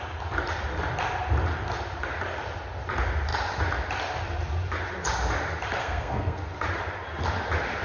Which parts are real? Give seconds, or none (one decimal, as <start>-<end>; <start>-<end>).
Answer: 0.0-5.8; 6.5-7.8